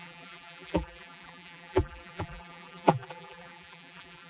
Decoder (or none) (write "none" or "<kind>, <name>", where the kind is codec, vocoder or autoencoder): vocoder, BigVGAN v2